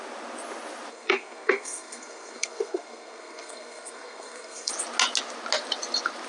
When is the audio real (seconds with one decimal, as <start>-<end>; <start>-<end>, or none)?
0.0-0.9; 4.7-6.3